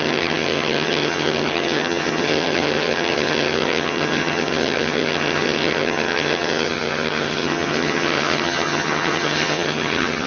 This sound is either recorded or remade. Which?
remade